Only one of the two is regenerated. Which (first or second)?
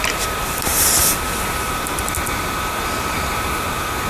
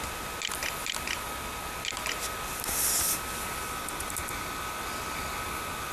first